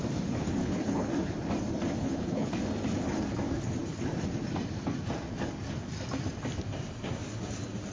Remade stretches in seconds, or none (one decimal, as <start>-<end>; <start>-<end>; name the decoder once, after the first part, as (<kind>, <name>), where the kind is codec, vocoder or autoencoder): 0.6-1.1 (codec, HILCodec); 2.0-2.5

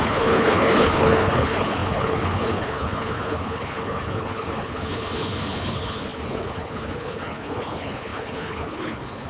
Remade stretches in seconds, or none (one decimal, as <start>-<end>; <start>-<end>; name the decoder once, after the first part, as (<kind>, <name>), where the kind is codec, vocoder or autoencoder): 0.0-9.3 (codec, HILCodec)

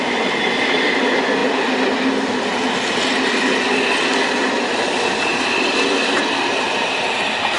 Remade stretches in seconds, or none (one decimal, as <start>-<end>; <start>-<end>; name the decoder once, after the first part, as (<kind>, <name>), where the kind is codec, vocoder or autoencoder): none

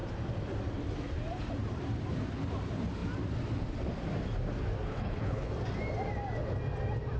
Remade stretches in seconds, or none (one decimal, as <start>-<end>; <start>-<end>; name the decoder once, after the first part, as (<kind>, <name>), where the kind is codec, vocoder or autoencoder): 4.9-5.5 (codec, HILCodec)